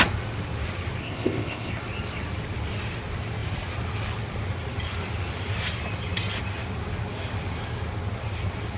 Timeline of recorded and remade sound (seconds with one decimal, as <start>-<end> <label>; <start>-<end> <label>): 0.0-1.0 recorded; 1.0-1.7 remade; 1.7-8.8 recorded